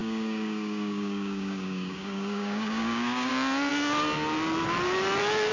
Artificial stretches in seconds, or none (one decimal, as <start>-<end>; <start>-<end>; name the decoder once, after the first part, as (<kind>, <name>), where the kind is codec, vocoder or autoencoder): 0.0-3.3 (codec, DAC)